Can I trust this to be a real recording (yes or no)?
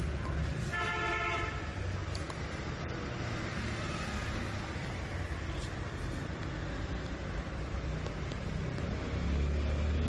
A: yes